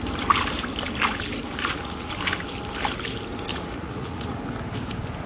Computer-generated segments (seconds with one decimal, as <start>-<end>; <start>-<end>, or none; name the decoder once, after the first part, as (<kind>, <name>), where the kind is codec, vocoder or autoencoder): 1.6-2.1 (vocoder, Vocos); 3.5-4.4